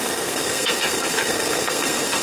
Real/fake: fake